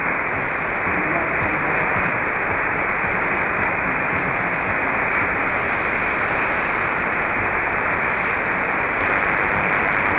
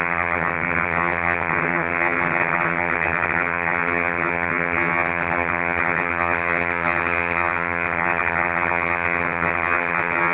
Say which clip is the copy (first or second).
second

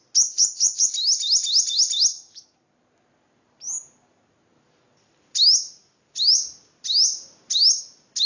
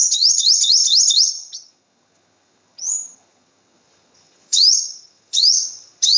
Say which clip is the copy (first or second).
second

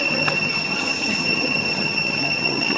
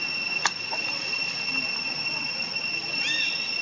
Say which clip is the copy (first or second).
first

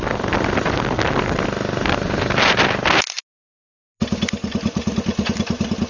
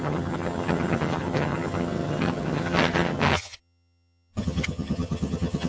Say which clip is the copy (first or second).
second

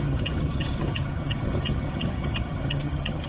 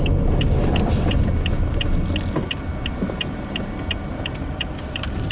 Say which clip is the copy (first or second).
first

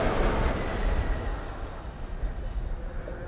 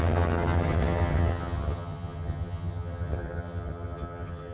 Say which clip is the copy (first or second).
second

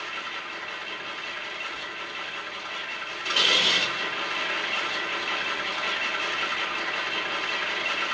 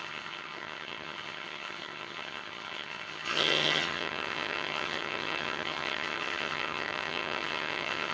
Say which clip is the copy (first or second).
second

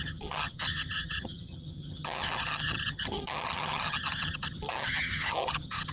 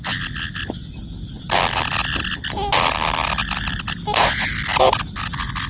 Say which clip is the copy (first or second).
first